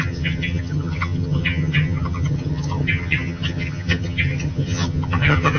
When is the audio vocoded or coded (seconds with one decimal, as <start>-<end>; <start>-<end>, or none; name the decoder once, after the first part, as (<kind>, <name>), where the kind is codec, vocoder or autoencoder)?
0.0-5.6 (vocoder, HiFi-GAN)